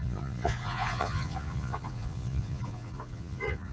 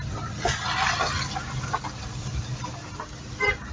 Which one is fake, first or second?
first